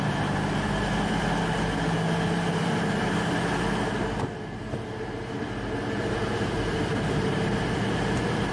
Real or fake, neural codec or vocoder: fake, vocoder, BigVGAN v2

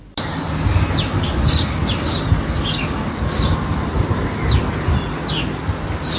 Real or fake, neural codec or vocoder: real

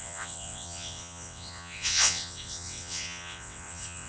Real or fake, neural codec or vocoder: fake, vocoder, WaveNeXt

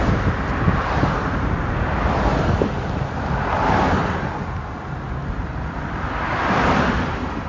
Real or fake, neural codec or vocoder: real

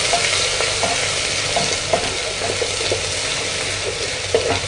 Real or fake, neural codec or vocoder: real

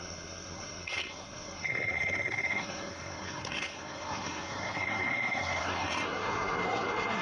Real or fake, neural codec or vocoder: fake, codec, SNAC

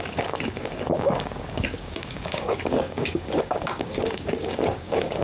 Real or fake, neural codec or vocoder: fake, codec, DAC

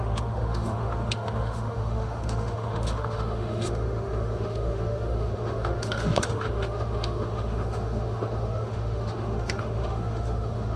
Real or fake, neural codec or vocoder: fake, autoencoder, DAC-VAE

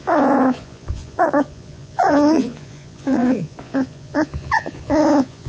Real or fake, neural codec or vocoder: fake, vocoder, Vocos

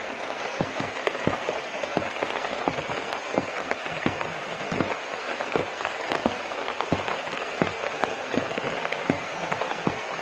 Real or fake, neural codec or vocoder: fake, codec, SNAC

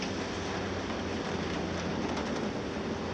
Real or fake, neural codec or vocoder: real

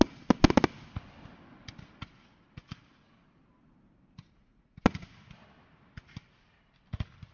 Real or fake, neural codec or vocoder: real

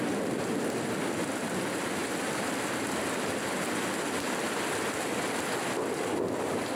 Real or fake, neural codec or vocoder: real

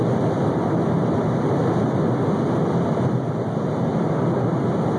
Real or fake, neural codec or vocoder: real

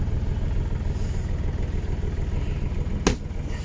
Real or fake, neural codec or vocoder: real